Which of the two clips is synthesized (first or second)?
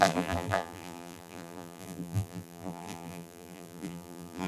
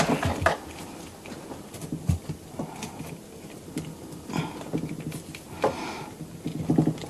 first